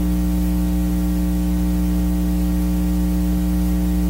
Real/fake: real